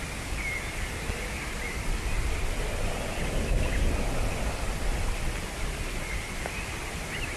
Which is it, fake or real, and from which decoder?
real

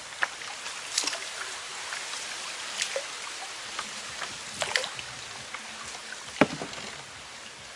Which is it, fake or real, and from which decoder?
real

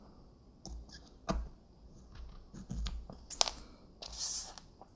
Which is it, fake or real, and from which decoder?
real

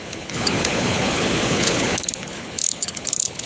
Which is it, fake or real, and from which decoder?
fake, codec, HILCodec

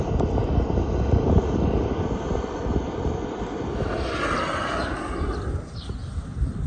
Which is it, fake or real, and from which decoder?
real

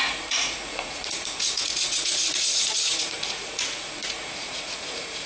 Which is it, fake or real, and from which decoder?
fake, vocoder, Vocos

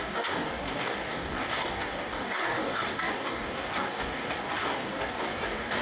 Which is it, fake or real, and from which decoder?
fake, codec, DAC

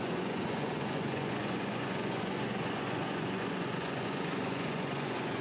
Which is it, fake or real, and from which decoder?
fake, vocoder, Vocos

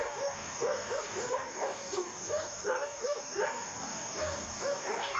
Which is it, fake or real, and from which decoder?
fake, codec, DAC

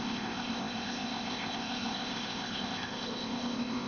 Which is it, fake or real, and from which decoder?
fake, codec, ZipCodec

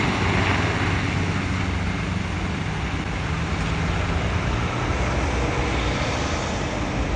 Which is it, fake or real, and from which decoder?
real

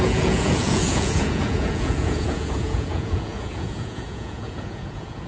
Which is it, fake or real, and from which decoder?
fake, vocoder, Vocos